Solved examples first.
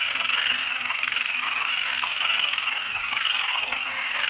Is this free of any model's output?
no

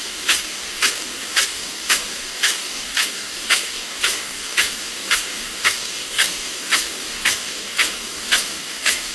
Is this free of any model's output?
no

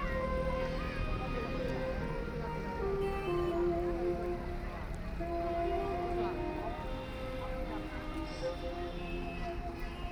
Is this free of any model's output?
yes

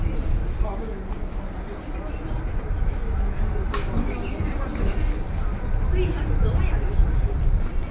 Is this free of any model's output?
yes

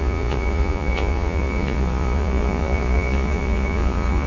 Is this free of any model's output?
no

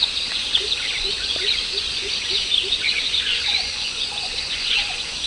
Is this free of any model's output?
no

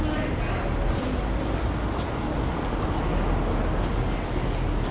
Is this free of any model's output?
yes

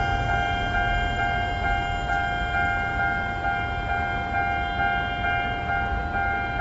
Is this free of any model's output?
yes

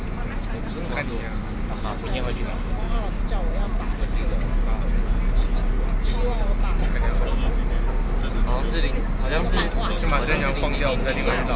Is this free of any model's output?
yes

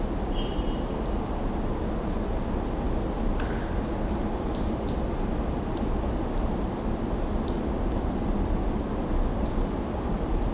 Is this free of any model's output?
yes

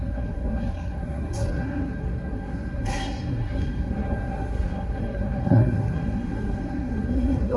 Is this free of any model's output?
no